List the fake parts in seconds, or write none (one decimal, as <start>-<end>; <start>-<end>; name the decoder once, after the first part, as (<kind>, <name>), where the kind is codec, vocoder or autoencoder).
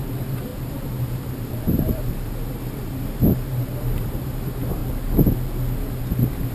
0.0-4.8 (vocoder, BigVGAN v2); 6.0-6.5